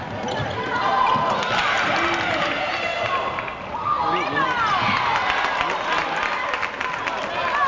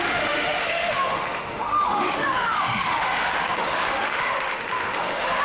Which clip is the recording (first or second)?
first